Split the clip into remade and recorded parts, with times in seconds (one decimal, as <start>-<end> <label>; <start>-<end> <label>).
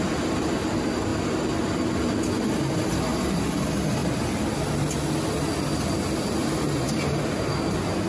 0.0-8.1 recorded